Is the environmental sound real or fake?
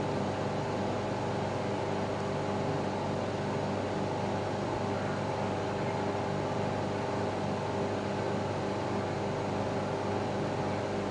real